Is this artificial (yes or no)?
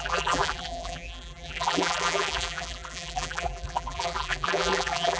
yes